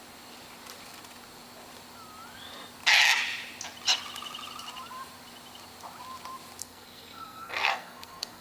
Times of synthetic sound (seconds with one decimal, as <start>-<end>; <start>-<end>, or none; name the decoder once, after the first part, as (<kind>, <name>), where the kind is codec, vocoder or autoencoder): 6.6-8.4 (codec, SNAC)